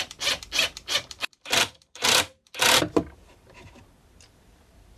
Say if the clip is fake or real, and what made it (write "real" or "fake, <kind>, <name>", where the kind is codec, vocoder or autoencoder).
fake, vocoder, BigVGAN v2